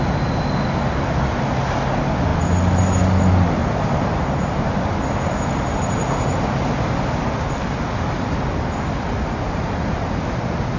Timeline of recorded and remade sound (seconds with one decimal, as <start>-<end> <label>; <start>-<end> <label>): 0.0-3.6 recorded; 3.6-5.0 remade; 5.0-10.8 recorded